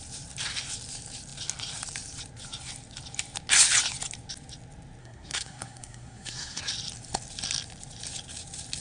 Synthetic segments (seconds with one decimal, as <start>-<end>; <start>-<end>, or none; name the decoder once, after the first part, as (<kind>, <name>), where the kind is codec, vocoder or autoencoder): 5.0-6.6 (codec, SNAC)